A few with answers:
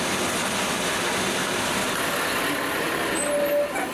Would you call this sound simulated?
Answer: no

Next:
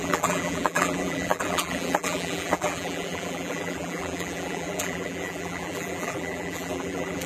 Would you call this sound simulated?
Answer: yes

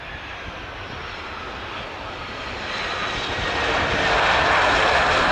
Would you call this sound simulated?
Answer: yes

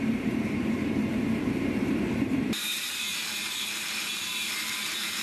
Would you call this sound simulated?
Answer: yes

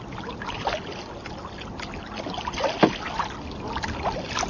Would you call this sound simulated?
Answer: no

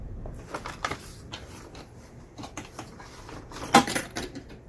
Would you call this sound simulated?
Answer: yes